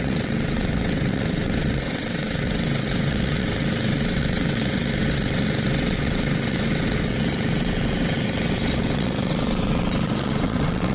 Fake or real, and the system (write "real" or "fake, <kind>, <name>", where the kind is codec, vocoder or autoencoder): fake, vocoder, WaveNeXt